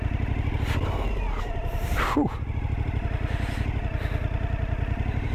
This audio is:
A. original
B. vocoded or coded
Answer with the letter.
B